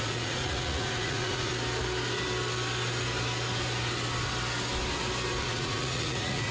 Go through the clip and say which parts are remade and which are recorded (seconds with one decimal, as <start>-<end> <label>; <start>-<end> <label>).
0.0-1.5 remade; 1.5-5.4 recorded; 5.4-6.5 remade